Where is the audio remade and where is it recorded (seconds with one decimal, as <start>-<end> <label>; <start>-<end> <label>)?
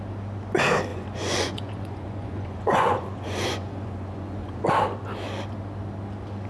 0.0-0.9 recorded; 0.9-4.7 remade; 4.7-6.5 recorded